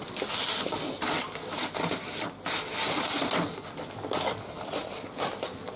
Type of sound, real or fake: real